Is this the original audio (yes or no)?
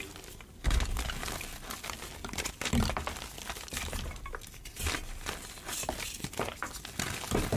yes